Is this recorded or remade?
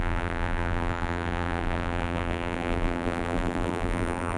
remade